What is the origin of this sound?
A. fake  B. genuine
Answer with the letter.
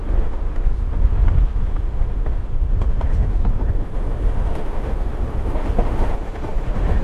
A